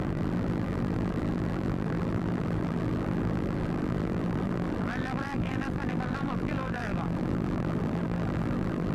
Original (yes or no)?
no